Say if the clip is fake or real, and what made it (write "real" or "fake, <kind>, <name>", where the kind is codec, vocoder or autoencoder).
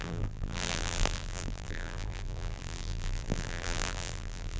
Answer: fake, vocoder, BigVGAN v2